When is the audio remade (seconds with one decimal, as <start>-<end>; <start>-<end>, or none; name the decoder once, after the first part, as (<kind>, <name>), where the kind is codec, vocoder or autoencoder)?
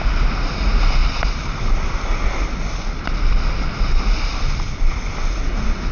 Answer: 1.0-1.7 (vocoder, BigVGAN v2)